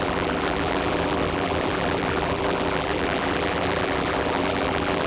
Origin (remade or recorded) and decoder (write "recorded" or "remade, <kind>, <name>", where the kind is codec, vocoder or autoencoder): remade, vocoder, BigVGAN v2